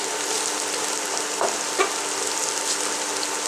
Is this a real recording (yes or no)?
yes